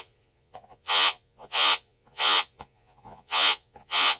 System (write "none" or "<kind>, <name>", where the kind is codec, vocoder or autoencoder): vocoder, Vocos